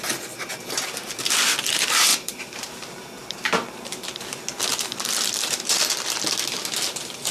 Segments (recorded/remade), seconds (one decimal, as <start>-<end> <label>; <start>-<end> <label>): 0.0-2.1 recorded; 2.1-4.2 remade; 4.2-4.7 recorded; 4.7-5.8 remade; 5.8-7.3 recorded